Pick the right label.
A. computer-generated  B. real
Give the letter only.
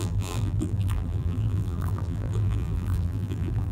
A